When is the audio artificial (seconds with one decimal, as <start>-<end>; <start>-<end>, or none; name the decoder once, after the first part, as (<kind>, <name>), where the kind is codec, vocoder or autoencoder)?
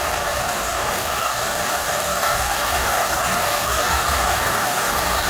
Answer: 0.0-5.3 (codec, DAC)